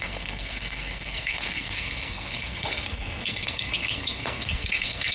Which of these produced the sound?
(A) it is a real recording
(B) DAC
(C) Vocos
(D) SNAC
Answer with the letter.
D